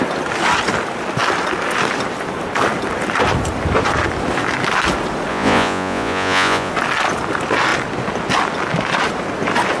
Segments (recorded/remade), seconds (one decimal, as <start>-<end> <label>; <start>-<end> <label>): 0.0-5.3 recorded; 5.3-6.7 remade; 6.7-9.8 recorded